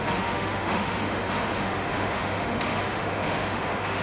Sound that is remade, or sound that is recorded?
remade